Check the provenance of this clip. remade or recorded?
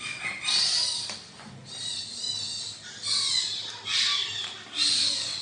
recorded